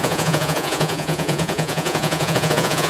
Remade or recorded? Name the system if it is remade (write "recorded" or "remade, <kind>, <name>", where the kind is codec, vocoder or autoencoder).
remade, vocoder, Vocos